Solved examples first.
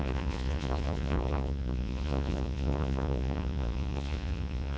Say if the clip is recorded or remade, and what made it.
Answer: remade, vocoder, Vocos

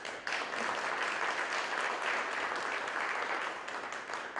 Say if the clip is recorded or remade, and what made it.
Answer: recorded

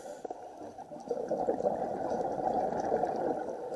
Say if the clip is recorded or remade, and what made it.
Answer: remade, vocoder, BigVGAN v2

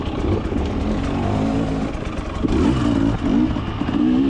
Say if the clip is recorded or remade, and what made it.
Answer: recorded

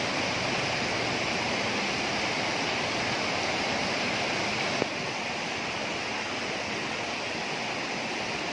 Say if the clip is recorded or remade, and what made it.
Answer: recorded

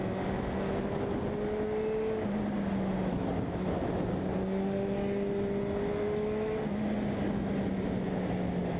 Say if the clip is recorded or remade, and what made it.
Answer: recorded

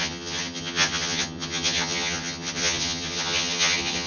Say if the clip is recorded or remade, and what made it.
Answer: remade, vocoder, HiFi-GAN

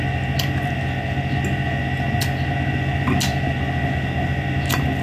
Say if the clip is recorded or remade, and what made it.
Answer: recorded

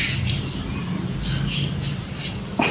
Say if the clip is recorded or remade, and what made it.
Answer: recorded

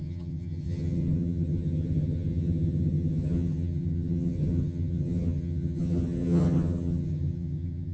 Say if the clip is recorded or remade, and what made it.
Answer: remade, vocoder, HiFi-GAN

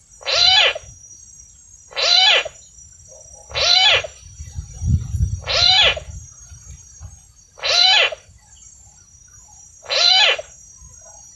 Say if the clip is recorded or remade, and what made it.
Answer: recorded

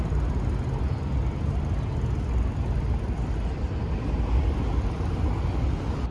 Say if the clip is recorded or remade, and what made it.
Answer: recorded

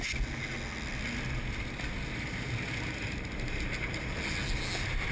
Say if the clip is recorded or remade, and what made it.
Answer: recorded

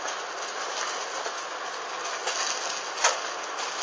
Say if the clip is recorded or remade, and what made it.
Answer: recorded